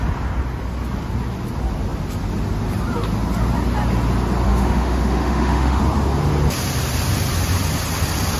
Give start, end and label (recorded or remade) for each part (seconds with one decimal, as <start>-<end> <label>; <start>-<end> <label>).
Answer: 0.0-4.5 recorded; 4.5-5.8 remade; 5.8-8.4 recorded